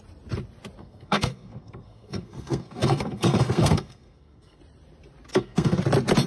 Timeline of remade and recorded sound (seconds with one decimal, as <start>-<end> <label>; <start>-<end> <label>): 0.0-0.8 recorded; 0.8-4.6 remade; 4.6-5.3 recorded; 5.3-5.8 remade; 5.8-6.3 recorded